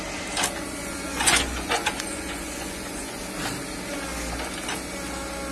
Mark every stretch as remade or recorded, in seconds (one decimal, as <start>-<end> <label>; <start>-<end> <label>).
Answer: 0.0-0.8 recorded; 0.8-3.2 remade; 3.2-5.5 recorded